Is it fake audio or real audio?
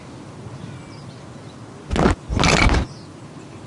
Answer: real